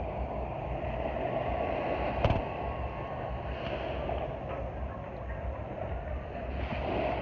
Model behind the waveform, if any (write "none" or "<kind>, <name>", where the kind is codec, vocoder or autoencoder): none